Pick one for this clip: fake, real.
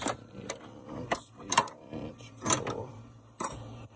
fake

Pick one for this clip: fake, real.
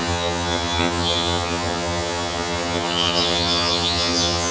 fake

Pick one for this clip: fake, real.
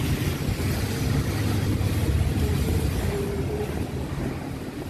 real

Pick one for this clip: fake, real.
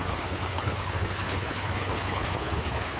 fake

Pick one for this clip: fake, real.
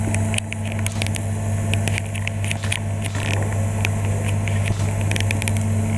real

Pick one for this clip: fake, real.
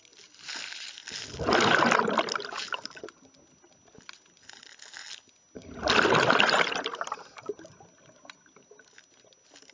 real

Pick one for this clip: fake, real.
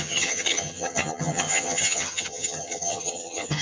fake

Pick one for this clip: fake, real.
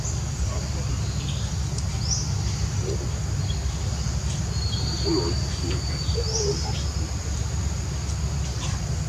real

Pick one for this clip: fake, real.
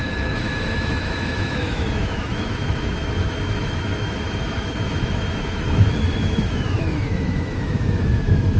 fake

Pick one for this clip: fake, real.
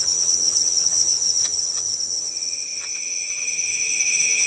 fake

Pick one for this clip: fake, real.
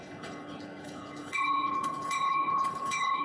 fake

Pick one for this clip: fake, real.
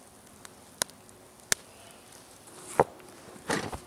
real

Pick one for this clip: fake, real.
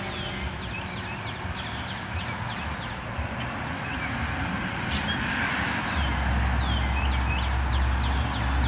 real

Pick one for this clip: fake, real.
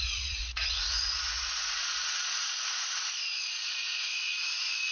fake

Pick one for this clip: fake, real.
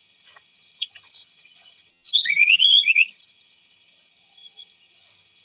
fake